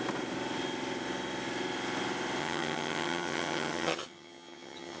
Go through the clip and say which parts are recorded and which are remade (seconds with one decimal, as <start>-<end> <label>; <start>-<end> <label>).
0.0-2.4 recorded; 2.4-5.0 remade

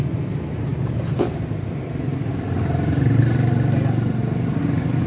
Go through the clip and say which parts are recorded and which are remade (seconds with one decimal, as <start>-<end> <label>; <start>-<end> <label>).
0.0-5.1 recorded

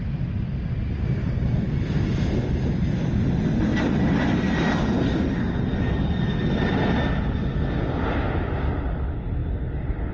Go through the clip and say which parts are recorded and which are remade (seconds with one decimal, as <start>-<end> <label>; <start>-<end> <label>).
0.0-10.1 recorded

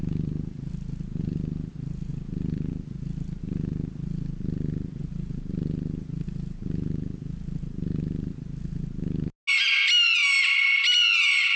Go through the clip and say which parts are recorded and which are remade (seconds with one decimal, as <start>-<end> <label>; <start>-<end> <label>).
0.0-11.6 recorded